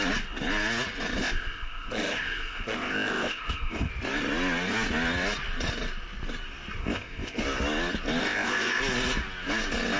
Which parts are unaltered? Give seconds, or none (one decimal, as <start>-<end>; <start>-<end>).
0.0-1.2; 3.9-6.8; 7.4-8.2; 8.8-10.0